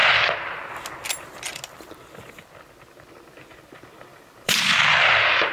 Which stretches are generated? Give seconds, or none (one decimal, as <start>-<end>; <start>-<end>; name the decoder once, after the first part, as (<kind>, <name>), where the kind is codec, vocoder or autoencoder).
4.1-4.7 (vocoder, BigVGAN v2)